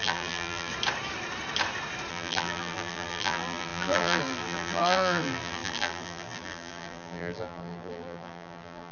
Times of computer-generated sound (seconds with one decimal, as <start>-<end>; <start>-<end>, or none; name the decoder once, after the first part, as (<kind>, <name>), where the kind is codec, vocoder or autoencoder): 0.0-0.7 (vocoder, BigVGAN v2); 2.1-8.9